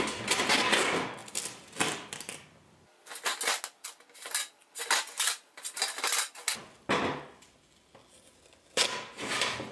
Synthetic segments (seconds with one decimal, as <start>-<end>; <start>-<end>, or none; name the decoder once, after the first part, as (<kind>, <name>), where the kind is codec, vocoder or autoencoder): none